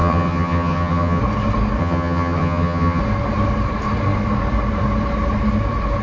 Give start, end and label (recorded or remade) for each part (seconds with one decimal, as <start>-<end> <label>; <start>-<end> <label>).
0.0-1.2 remade; 1.2-1.8 recorded; 1.8-3.0 remade; 3.0-6.0 recorded